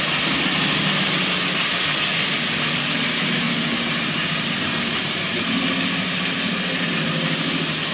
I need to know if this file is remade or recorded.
recorded